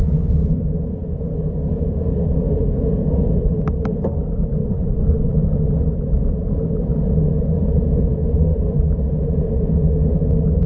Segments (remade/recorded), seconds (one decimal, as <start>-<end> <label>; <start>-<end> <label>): 0.0-4.6 recorded; 4.6-5.3 remade; 5.3-10.7 recorded